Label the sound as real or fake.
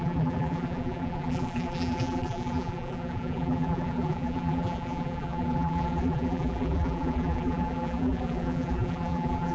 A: fake